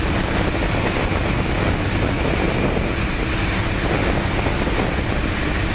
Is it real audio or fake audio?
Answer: real